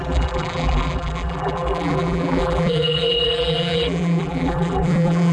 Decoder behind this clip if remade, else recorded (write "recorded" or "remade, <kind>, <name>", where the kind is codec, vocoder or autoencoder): remade, vocoder, BigVGAN v2